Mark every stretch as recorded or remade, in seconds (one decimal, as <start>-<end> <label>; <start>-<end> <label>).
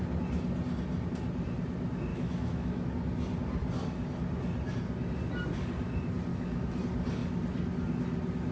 0.0-2.1 recorded; 2.1-2.9 remade; 2.9-6.3 recorded; 6.3-6.8 remade; 6.8-8.5 recorded